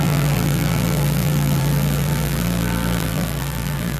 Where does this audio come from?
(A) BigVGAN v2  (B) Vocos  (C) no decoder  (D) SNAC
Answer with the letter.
A